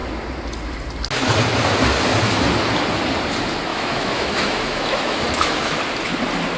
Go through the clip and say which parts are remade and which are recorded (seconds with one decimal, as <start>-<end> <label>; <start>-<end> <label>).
0.0-3.7 recorded; 3.7-5.8 remade; 5.8-6.6 recorded